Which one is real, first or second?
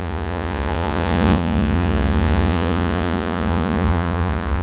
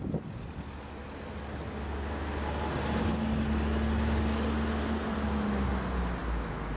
second